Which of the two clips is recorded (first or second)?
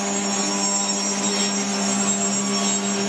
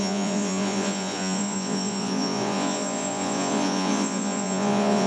first